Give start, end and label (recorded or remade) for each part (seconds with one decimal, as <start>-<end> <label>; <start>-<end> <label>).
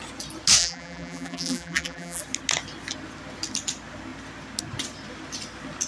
0.0-0.6 recorded; 0.6-2.2 remade; 2.2-5.9 recorded